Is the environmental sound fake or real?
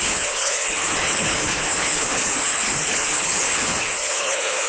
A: fake